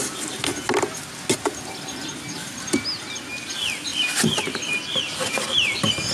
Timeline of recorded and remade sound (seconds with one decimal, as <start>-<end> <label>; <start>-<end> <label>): 0.0-6.1 recorded

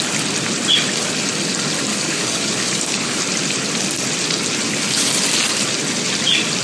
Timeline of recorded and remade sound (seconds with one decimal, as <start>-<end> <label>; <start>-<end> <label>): 0.0-1.9 recorded; 1.9-3.2 remade; 3.2-6.6 recorded

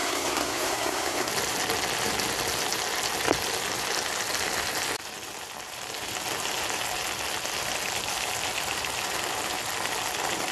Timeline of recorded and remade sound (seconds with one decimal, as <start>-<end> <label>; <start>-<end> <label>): 0.0-1.3 remade; 1.3-10.5 recorded

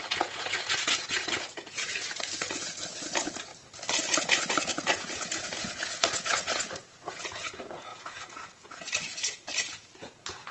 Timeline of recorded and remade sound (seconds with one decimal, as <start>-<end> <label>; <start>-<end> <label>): 0.0-3.5 remade; 3.5-4.1 recorded; 4.1-10.5 remade

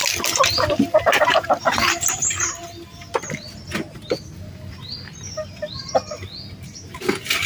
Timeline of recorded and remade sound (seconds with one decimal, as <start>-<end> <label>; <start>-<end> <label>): 0.0-1.0 recorded; 1.0-2.6 remade; 2.6-5.3 recorded; 5.3-6.0 remade; 6.0-7.5 recorded

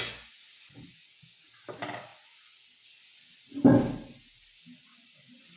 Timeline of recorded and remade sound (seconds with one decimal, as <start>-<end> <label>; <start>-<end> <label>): 0.0-5.6 recorded

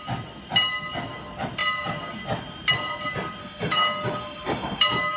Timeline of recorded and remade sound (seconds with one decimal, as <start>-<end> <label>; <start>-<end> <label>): 0.0-3.4 recorded; 3.4-4.8 remade; 4.8-5.2 recorded